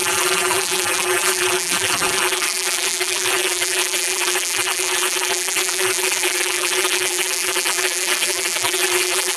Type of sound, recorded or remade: remade